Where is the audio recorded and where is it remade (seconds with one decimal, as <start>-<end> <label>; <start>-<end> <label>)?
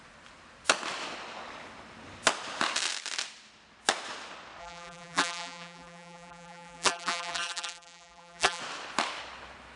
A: 0.0-4.6 recorded; 4.6-8.6 remade; 8.6-9.8 recorded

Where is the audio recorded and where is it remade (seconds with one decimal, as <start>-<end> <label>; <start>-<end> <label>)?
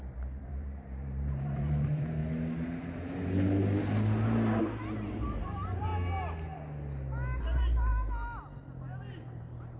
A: 0.0-2.2 remade; 2.2-4.6 recorded; 4.6-5.9 remade; 5.9-7.4 recorded; 7.4-7.9 remade; 7.9-9.2 recorded; 9.2-9.8 remade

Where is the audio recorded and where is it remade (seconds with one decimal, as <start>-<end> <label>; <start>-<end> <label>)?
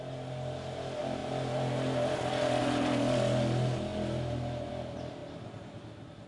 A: 0.0-6.3 recorded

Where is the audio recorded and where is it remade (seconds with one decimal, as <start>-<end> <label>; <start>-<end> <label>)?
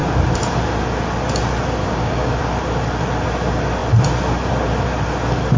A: 0.0-1.8 recorded; 1.8-2.4 remade; 2.4-5.6 recorded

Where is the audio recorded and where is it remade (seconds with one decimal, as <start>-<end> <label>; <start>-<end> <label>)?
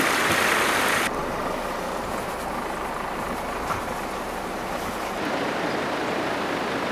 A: 0.0-6.9 recorded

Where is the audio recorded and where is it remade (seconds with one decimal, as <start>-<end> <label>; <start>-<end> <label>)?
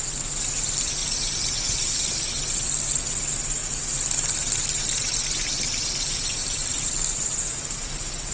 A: 0.0-1.0 recorded; 1.0-2.2 remade; 2.2-6.4 recorded; 6.4-7.9 remade; 7.9-8.3 recorded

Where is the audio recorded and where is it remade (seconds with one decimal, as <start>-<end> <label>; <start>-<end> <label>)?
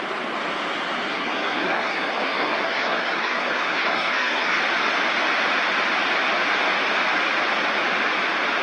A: 0.0-1.1 recorded; 1.1-4.6 remade; 4.6-8.6 recorded